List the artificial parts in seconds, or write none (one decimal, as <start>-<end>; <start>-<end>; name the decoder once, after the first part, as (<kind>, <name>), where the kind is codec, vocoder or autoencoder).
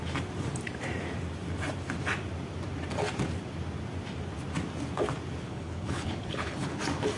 5.5-6.8 (codec, HILCodec)